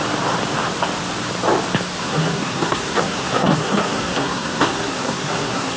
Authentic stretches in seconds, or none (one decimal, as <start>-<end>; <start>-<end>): 0.0-2.0